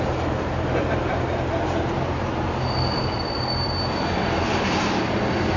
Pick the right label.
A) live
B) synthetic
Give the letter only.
A